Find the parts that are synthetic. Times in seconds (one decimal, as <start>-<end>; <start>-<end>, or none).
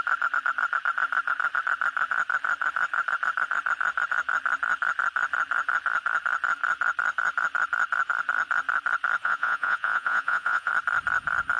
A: 9.2-10.7